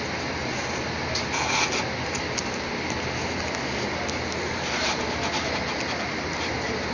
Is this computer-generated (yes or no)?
no